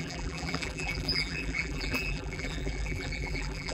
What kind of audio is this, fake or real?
fake